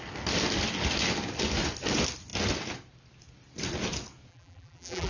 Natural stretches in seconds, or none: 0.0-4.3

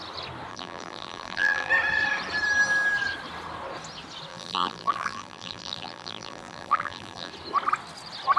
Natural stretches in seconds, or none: 0.0-0.5; 1.7-4.3; 7.3-8.4